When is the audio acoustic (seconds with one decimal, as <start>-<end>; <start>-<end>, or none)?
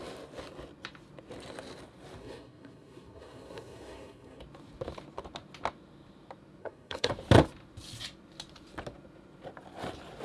0.0-2.2; 4.4-6.6; 7.1-10.2